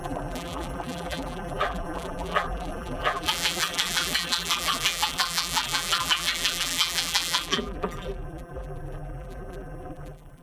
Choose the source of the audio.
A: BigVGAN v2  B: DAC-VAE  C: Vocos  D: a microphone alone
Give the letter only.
A